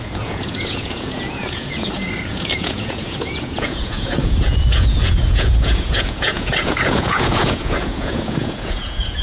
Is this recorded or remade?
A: remade